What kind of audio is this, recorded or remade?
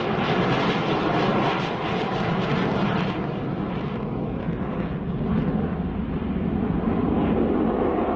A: recorded